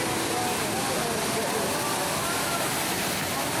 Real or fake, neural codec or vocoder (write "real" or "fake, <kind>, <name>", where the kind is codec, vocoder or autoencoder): fake, vocoder, BigVGAN v2